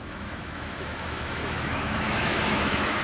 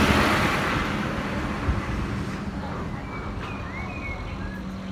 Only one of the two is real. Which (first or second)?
second